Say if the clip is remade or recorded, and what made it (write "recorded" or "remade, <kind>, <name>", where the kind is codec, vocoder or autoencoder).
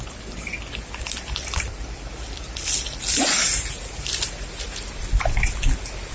recorded